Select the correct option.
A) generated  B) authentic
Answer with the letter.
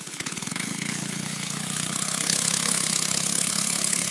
A